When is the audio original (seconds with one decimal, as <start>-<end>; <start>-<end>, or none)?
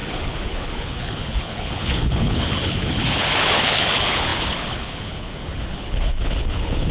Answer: none